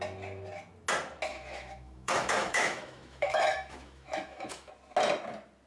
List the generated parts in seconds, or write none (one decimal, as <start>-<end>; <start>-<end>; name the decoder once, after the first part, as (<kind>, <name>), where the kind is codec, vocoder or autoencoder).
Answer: 1.3-4.7 (autoencoder, DAC-VAE)